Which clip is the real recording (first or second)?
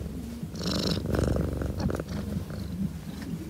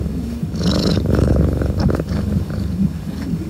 first